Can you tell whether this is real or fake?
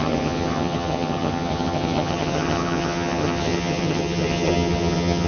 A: fake